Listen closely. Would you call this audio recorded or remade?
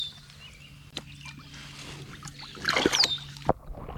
recorded